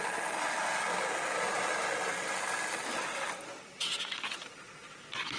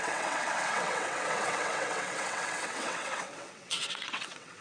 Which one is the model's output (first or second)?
second